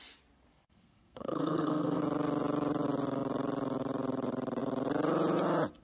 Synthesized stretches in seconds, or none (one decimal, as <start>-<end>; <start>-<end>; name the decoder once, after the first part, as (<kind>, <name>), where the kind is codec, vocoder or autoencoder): 0.5-2.0 (codec, SNAC)

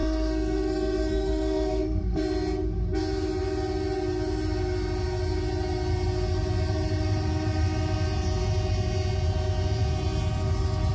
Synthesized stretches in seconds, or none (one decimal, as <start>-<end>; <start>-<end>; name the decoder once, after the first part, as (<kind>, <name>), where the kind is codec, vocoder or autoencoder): 0.0-2.2 (codec, SNAC)

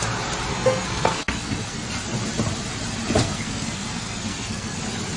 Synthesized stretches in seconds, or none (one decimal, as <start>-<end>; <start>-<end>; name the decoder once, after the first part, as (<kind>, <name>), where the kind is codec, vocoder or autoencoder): 0.5-1.9 (codec, SNAC); 3.2-4.8

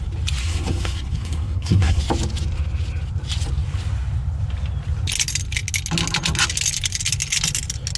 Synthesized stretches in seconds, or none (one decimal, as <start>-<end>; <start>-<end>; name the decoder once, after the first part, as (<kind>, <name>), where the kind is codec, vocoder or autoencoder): 0.4-2.0 (codec, SNAC)